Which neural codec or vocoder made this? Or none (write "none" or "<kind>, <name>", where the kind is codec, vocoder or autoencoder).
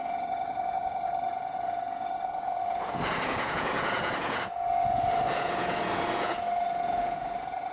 vocoder, Vocos